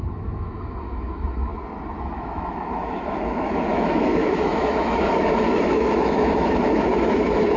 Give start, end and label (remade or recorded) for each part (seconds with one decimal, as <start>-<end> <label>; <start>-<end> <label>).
0.0-1.5 remade; 1.5-2.0 recorded; 2.0-7.6 remade